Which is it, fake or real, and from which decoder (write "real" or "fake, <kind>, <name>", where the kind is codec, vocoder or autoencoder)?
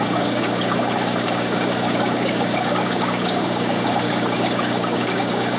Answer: fake, codec, DAC